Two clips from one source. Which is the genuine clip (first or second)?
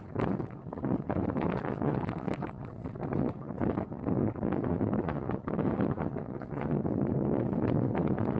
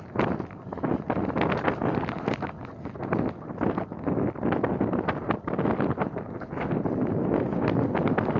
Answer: second